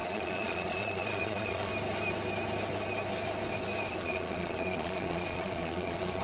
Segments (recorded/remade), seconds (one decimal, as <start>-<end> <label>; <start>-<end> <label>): 0.0-1.7 remade; 1.7-3.9 recorded; 3.9-6.2 remade